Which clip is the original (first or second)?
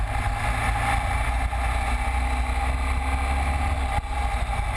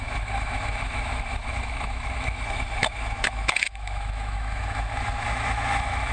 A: first